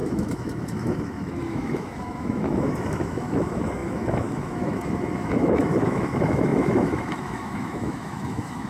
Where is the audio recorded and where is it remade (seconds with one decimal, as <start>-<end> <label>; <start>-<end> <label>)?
0.0-8.7 remade